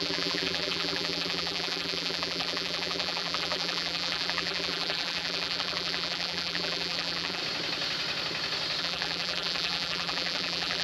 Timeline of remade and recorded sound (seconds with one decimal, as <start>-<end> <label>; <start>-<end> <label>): 0.0-7.4 remade; 7.4-8.8 recorded; 8.8-10.8 remade

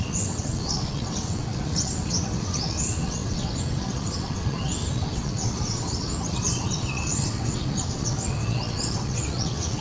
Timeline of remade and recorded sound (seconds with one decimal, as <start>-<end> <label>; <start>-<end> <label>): 0.0-9.8 remade